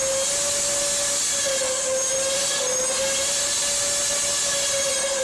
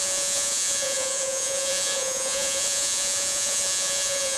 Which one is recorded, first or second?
first